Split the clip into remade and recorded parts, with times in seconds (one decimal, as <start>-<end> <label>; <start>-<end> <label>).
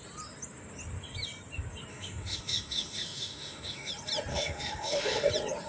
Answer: 0.0-1.9 recorded; 1.9-3.9 remade; 3.9-4.3 recorded; 4.3-5.3 remade; 5.3-5.7 recorded